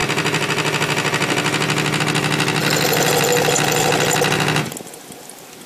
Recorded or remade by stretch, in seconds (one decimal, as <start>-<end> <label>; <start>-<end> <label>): 0.0-5.7 recorded